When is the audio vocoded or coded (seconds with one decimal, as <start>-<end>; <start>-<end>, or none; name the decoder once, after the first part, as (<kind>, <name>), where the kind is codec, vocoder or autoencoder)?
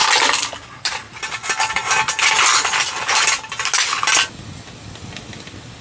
none